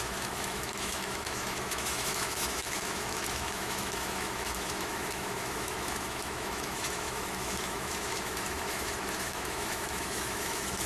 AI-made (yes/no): yes